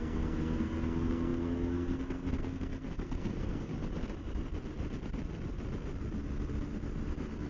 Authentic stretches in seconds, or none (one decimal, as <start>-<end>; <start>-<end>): 3.7-7.5